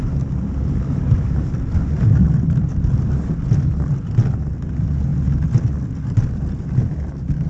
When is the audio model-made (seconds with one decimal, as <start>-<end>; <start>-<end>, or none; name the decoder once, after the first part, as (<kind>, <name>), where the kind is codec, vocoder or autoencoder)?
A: none